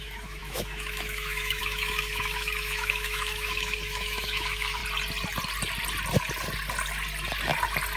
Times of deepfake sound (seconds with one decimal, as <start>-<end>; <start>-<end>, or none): 0.0-4.8

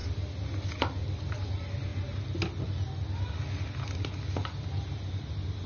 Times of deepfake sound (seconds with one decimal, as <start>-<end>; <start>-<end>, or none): none

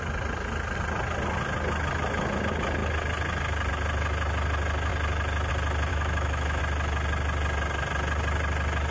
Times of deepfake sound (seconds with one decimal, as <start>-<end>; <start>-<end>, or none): 5.9-6.6

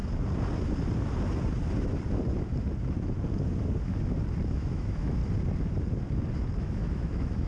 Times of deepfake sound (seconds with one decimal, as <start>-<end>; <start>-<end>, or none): 4.5-5.2; 6.6-7.5

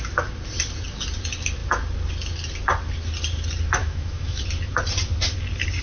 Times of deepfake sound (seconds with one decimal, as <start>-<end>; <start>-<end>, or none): 3.8-4.4